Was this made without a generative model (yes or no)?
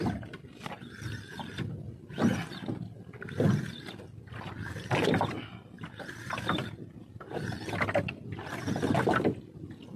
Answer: yes